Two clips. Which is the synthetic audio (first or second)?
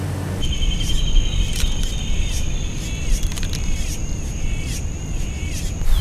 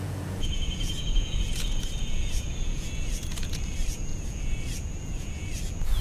second